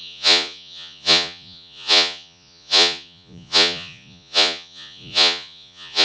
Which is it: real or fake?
fake